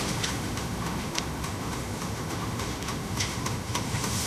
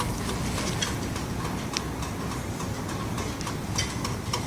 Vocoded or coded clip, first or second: first